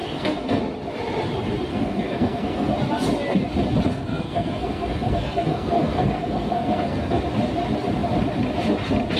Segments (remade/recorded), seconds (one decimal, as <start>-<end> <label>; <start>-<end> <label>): 0.0-0.6 remade; 0.6-1.7 recorded; 1.7-2.7 remade; 2.7-3.9 recorded; 3.9-7.2 remade; 7.2-9.2 recorded